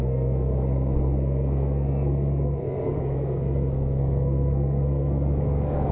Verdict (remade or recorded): remade